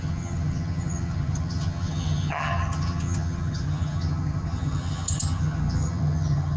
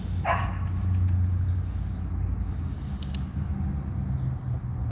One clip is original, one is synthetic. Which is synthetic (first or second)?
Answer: first